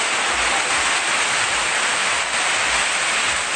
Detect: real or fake real